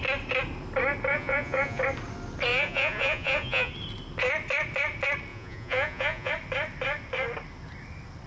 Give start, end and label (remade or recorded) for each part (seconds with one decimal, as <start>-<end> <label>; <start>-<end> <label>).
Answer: 0.0-1.1 recorded; 1.1-1.8 remade; 1.8-2.5 recorded; 2.5-3.7 remade; 3.7-5.3 recorded; 5.3-6.3 remade; 6.3-8.3 recorded